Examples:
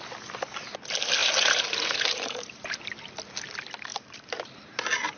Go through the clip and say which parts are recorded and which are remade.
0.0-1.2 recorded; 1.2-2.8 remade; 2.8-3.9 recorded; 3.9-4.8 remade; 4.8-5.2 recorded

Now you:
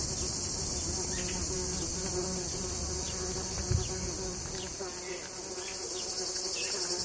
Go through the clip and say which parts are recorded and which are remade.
0.0-7.0 recorded

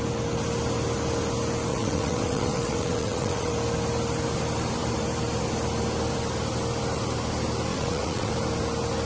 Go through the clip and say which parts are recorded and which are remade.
0.0-1.7 recorded; 1.7-3.5 remade; 3.5-7.7 recorded; 7.7-8.3 remade; 8.3-9.1 recorded

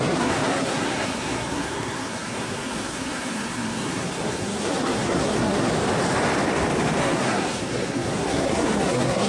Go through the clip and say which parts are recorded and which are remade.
0.0-5.7 remade; 5.7-7.0 recorded; 7.0-9.3 remade

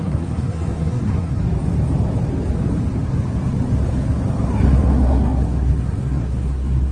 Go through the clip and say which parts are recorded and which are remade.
0.0-1.4 remade; 1.4-4.5 recorded; 4.5-6.9 remade